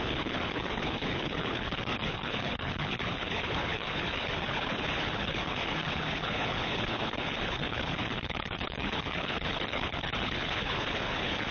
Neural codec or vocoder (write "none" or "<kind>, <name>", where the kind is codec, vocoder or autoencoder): codec, HILCodec